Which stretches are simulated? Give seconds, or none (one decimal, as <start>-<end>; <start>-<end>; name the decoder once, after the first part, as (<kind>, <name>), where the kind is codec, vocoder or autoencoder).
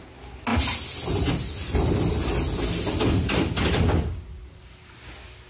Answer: none